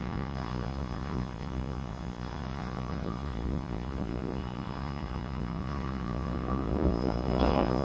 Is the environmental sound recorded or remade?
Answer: remade